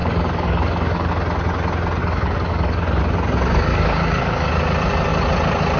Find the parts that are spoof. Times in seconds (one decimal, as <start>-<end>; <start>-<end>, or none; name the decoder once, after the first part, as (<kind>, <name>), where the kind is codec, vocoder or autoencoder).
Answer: 0.0-1.1 (codec, DAC); 2.0-3.0; 3.7-4.5